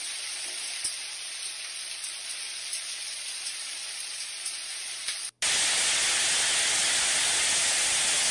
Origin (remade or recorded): recorded